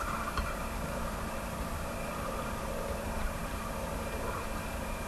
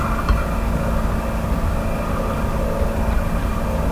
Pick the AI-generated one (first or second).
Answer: first